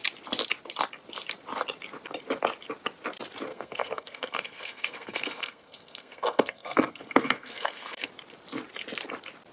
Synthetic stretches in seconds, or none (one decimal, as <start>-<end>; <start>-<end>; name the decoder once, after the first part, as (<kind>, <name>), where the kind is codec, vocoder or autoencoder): 3.5-8.1 (codec, SNAC)

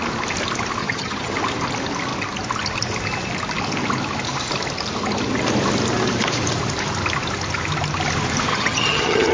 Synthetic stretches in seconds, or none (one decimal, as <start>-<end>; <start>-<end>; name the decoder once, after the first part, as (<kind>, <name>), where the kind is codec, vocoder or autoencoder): 0.8-1.4 (vocoder, HiFi-GAN); 8.5-9.3